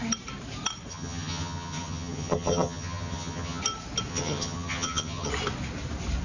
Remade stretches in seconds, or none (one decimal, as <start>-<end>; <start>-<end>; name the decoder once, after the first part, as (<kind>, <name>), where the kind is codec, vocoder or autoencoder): 0.9-3.6 (vocoder, HiFi-GAN); 4.1-5.3